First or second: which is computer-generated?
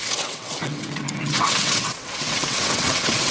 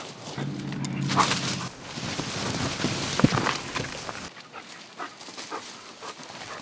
first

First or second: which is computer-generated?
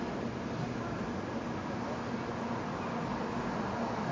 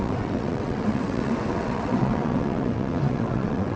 second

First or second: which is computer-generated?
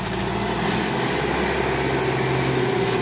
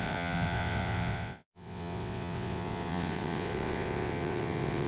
second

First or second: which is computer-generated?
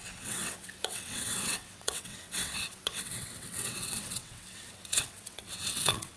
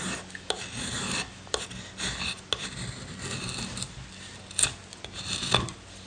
first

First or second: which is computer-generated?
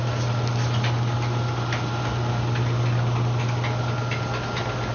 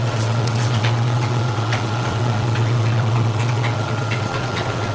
second